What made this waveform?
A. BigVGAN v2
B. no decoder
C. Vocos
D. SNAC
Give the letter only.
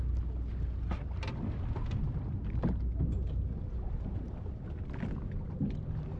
B